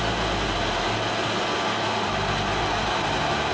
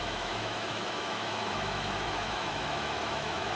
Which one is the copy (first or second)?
second